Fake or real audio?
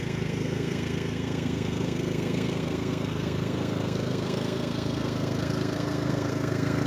fake